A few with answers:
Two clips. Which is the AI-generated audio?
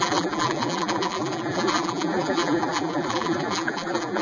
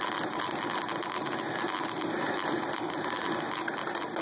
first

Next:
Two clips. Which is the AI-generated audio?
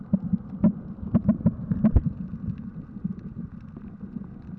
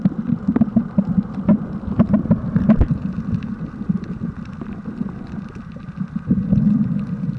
second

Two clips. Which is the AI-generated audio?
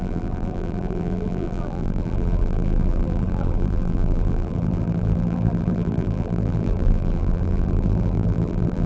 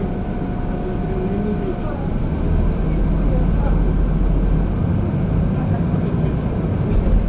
first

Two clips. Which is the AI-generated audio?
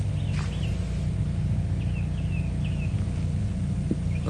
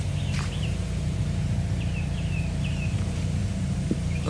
second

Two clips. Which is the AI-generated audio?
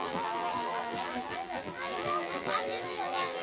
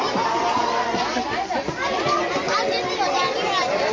first